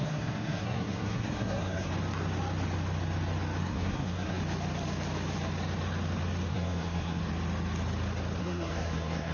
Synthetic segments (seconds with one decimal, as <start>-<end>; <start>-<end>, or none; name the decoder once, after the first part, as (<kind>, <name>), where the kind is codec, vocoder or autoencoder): 0.0-1.9 (codec, SNAC); 3.6-4.4; 6.5-7.2; 8.4-9.3